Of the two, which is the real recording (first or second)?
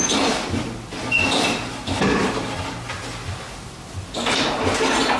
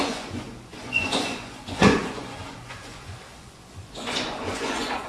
first